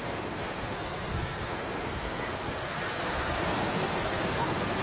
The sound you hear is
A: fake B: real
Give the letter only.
A